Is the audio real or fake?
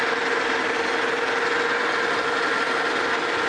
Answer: real